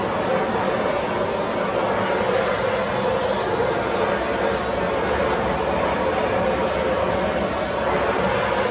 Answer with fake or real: real